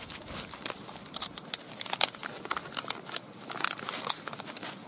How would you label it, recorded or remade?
recorded